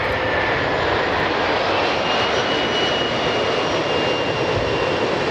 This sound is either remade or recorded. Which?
recorded